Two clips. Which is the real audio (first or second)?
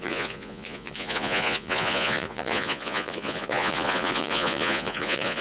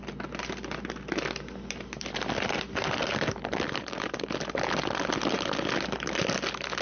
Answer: second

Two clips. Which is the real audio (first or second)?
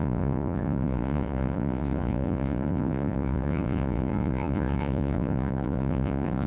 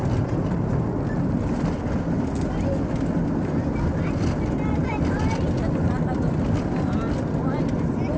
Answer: second